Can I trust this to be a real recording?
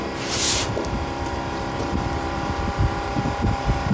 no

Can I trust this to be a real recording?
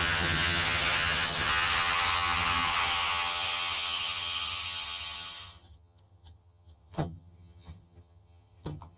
no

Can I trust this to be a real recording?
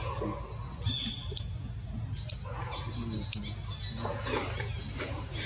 yes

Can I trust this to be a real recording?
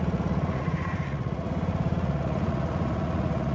no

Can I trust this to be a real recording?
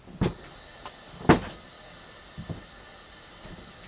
yes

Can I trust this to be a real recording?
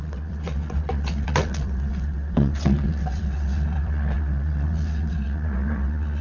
no